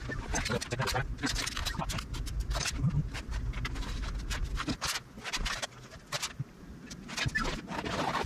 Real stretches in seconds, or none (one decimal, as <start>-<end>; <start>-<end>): 0.0-1.6; 3.3-4.5; 7.0-8.3